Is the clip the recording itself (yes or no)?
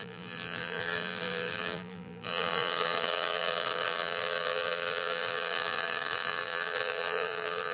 no